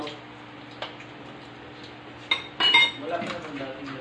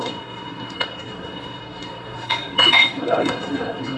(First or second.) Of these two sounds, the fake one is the second